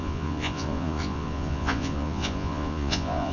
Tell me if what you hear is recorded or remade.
remade